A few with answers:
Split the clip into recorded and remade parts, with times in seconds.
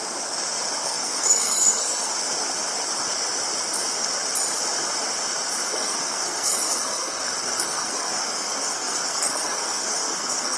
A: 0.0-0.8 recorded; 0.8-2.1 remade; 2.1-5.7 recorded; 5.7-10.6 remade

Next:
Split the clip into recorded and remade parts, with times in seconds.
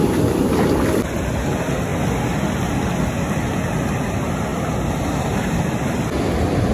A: 0.0-6.7 recorded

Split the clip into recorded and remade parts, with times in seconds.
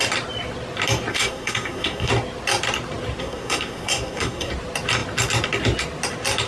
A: 0.0-1.1 recorded; 1.1-2.1 remade; 2.1-3.2 recorded; 3.2-4.5 remade; 4.5-6.5 recorded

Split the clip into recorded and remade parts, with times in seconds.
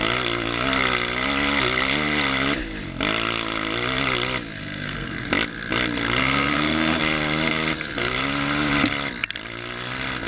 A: 0.0-4.6 recorded; 4.6-5.3 remade; 5.3-6.2 recorded; 6.2-7.0 remade; 7.0-10.3 recorded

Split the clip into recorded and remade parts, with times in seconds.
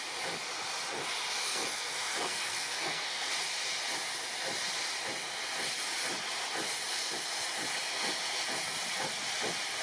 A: 0.0-1.4 recorded; 1.4-3.3 remade; 3.3-9.8 recorded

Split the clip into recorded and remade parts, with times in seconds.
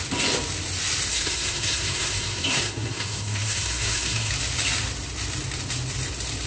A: 0.0-1.1 recorded; 1.1-4.3 remade; 4.3-6.5 recorded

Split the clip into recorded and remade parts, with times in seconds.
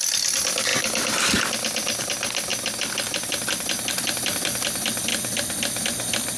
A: 0.0-6.4 recorded